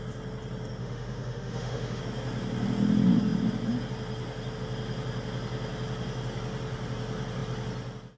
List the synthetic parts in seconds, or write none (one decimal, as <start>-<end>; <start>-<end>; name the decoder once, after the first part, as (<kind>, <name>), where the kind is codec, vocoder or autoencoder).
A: 0.8-2.0 (autoencoder, DAC-VAE)